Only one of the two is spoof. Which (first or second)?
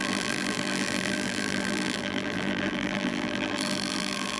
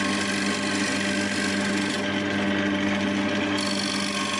first